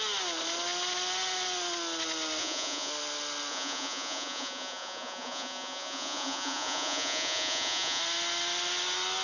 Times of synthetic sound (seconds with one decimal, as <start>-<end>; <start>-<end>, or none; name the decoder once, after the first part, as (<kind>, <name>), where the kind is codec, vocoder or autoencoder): 2.4-2.9 (vocoder, Vocos); 3.5-8.0